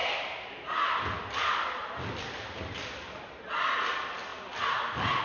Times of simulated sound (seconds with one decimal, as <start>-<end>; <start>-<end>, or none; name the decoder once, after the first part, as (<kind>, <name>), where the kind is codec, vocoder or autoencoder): none